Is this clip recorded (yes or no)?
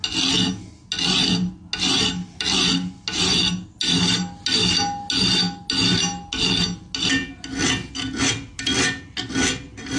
yes